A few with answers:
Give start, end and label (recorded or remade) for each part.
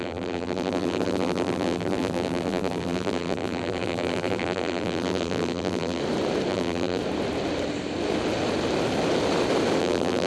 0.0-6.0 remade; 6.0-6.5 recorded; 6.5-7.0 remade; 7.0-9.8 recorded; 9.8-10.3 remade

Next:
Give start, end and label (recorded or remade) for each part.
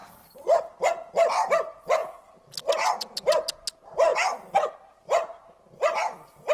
0.0-0.6 remade; 0.6-6.5 recorded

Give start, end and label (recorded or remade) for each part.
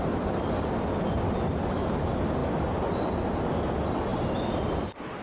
0.0-4.1 recorded; 4.1-5.2 remade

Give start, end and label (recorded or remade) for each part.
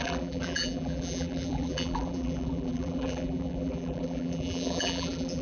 0.0-5.4 remade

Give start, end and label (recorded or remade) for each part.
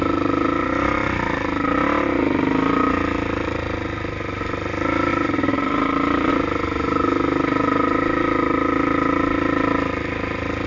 0.0-5.1 recorded; 5.1-6.3 remade; 6.3-10.7 recorded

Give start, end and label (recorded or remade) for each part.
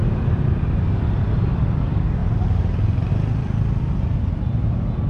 0.0-5.1 recorded